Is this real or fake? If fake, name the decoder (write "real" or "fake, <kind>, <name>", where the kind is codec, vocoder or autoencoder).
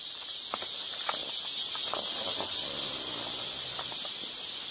real